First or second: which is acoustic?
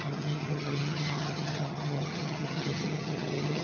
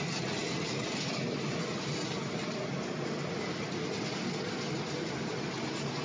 second